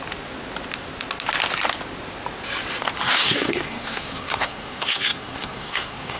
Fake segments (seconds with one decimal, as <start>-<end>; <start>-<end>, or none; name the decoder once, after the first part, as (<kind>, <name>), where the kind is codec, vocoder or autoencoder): 3.2-6.2 (codec, SNAC)